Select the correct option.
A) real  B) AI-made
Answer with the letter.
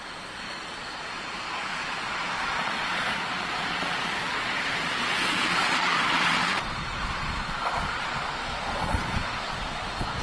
B